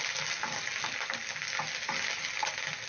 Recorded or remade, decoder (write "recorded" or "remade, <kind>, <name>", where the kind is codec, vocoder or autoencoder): recorded